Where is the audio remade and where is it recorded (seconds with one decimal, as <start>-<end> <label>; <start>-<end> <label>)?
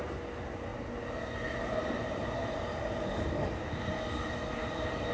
0.0-0.7 recorded; 0.7-1.2 remade; 1.2-1.8 recorded; 1.8-5.1 remade